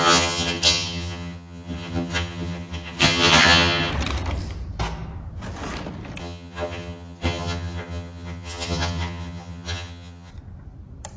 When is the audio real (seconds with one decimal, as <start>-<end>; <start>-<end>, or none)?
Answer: 3.9-6.2; 10.3-11.2